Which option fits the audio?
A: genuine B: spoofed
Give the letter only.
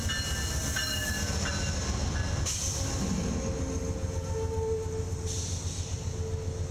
A